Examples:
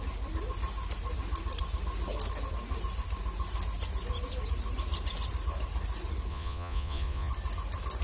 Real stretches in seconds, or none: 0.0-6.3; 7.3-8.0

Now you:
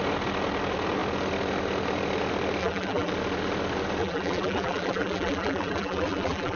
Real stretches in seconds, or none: 0.0-2.6; 3.1-4.0